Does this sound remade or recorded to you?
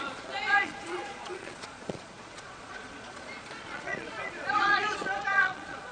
remade